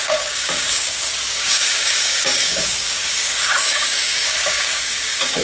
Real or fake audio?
fake